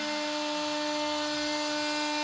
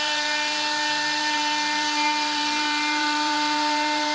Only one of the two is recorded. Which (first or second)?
first